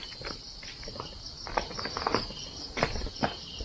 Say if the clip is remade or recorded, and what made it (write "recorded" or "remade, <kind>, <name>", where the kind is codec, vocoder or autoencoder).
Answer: recorded